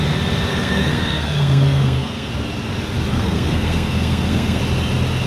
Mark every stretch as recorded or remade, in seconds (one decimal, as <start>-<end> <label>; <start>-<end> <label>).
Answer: 0.0-0.5 recorded; 0.5-2.3 remade; 2.3-3.1 recorded; 3.1-4.6 remade; 4.6-5.3 recorded